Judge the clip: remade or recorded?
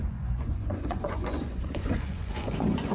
remade